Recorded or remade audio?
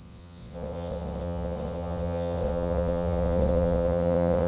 remade